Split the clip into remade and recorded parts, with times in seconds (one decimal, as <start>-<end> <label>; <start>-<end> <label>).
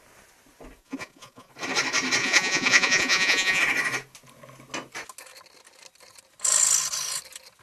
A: 0.0-0.8 recorded; 0.8-1.5 remade; 1.5-2.2 recorded; 2.2-3.6 remade; 3.6-7.6 recorded